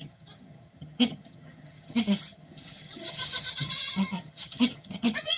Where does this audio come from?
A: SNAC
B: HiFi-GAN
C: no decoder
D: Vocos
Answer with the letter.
B